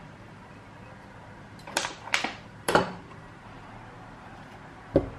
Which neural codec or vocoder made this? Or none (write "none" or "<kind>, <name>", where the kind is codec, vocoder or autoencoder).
vocoder, BigVGAN v2